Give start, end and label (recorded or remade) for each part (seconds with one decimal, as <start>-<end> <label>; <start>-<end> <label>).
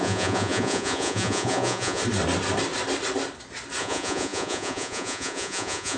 0.0-2.0 remade; 2.0-3.8 recorded; 3.8-6.0 remade